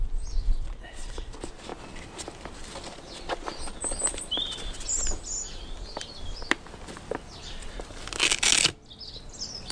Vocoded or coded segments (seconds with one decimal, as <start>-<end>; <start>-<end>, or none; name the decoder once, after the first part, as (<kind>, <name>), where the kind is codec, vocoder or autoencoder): none